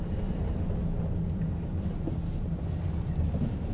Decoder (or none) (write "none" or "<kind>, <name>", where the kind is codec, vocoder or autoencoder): none